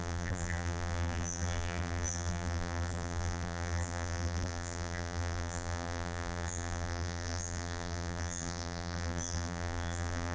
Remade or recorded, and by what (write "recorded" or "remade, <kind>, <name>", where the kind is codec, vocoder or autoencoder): remade, vocoder, BigVGAN v2